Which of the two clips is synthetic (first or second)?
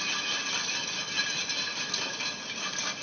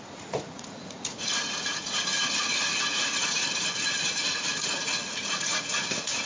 second